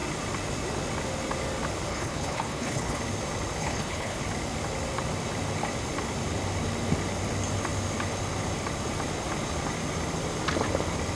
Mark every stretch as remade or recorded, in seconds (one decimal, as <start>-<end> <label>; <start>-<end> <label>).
0.0-1.9 recorded; 1.9-3.0 remade; 3.0-3.6 recorded; 3.6-4.2 remade; 4.2-11.1 recorded